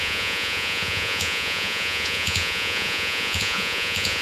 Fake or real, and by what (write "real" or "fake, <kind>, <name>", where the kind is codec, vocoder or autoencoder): fake, vocoder, Vocos